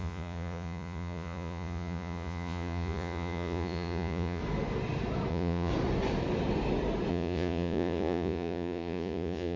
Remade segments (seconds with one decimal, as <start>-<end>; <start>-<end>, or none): 0.0-4.4; 5.3-5.7; 7.1-9.6